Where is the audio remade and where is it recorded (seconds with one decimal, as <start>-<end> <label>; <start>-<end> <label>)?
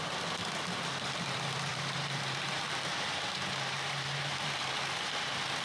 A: 0.0-1.7 recorded; 1.7-5.1 remade; 5.1-5.6 recorded